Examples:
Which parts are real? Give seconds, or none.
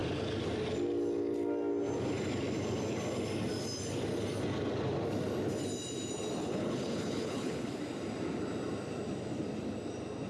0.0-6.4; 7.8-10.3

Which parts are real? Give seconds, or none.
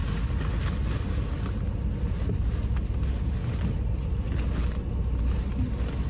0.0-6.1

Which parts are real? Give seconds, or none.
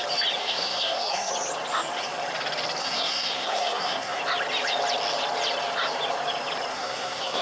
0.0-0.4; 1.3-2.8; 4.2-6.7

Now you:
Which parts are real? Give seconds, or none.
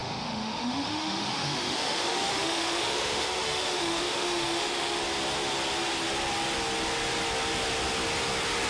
5.0-8.7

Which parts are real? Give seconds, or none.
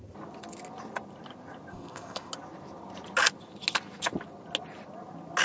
0.0-1.7; 2.3-5.4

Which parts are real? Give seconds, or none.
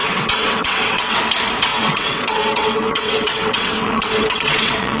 1.2-1.7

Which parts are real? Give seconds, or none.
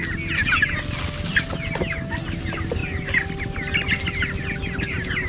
0.0-5.3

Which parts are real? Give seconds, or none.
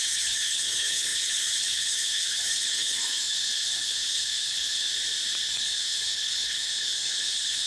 4.9-5.5